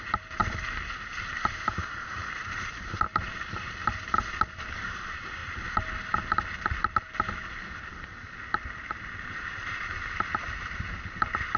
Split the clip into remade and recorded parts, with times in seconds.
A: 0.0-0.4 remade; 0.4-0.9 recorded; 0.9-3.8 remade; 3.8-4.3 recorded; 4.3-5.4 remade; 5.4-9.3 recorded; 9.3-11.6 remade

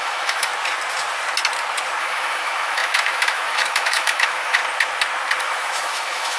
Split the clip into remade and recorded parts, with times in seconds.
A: 0.0-0.5 remade; 0.5-2.0 recorded; 2.0-4.6 remade; 4.6-5.4 recorded; 5.4-6.4 remade

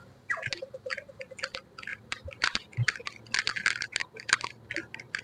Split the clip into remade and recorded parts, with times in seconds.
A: 0.0-1.2 remade; 1.2-1.9 recorded; 1.9-2.7 remade; 2.7-4.0 recorded; 4.0-5.2 remade

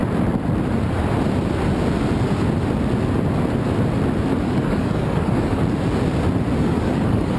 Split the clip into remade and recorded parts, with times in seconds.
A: 0.0-4.4 recorded; 4.4-5.6 remade; 5.6-6.6 recorded; 6.6-7.4 remade

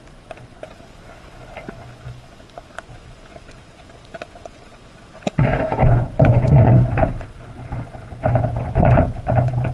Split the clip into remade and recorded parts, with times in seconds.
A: 0.0-9.7 remade